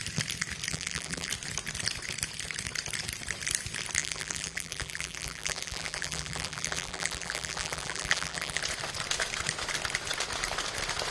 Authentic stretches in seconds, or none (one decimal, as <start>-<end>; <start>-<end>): 0.0-0.7; 1.3-4.0; 8.6-11.1

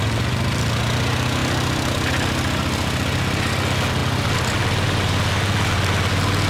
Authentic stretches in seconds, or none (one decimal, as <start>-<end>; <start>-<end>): 0.0-6.5

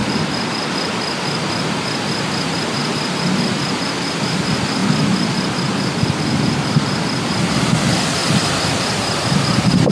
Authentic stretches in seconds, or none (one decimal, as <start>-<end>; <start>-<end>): 0.7-4.8; 7.5-8.2

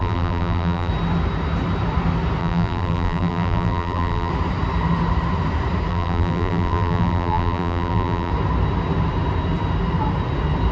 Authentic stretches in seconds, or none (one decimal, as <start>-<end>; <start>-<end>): 0.9-2.4; 4.3-5.9; 8.3-10.7